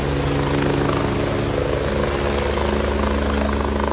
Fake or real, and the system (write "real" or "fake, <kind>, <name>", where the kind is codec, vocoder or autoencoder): real